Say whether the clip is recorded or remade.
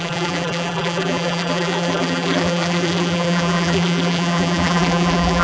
remade